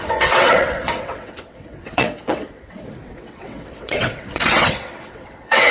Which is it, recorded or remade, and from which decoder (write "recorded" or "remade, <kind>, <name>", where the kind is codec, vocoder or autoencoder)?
remade, vocoder, WaveNeXt